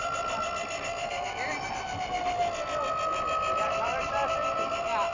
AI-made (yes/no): no